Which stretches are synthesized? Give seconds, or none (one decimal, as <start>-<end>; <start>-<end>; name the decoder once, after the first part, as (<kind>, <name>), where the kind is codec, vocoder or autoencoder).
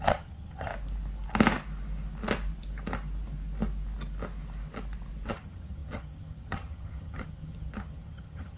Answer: 0.0-0.7 (vocoder, HiFi-GAN); 5.3-8.6